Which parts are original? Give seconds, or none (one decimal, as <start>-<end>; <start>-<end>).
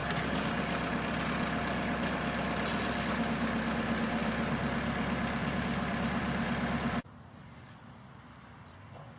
0.0-4.2; 7.9-9.2